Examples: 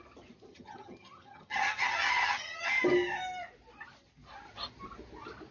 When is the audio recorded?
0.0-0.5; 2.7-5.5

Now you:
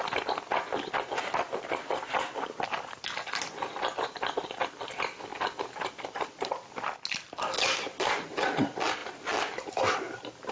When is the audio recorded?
0.0-10.5